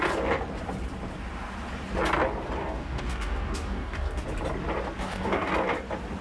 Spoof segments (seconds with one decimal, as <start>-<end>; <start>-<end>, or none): 2.6-4.2; 5.0-5.5